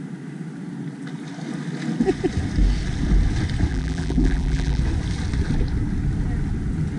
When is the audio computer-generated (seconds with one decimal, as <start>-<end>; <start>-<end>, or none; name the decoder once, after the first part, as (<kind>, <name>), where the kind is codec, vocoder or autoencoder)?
3.7-4.8 (vocoder, BigVGAN v2)